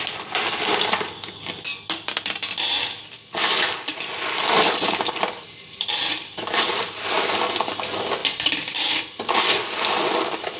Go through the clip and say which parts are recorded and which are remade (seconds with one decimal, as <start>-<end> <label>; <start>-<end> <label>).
0.0-8.2 recorded; 8.2-9.0 remade; 9.0-10.6 recorded